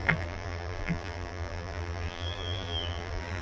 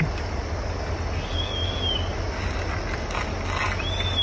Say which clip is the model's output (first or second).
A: first